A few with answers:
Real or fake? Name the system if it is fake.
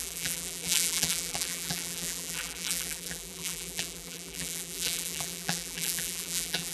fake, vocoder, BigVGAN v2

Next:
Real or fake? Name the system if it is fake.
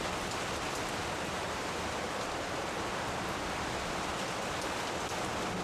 real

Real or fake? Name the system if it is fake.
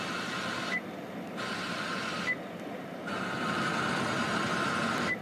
real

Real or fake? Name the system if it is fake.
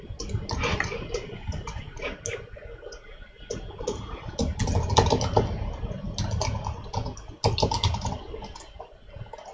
real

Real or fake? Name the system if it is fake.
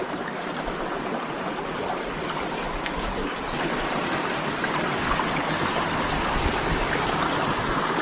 real